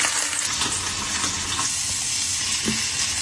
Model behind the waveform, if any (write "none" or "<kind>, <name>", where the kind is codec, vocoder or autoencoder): none